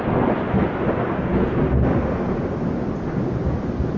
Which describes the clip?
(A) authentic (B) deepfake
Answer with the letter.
A